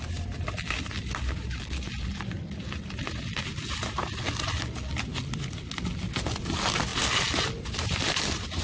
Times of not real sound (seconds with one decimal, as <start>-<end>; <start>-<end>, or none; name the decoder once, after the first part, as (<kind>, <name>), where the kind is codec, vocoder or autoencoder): none